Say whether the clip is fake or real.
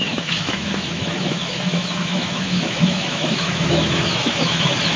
fake